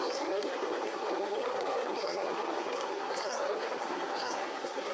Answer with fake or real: fake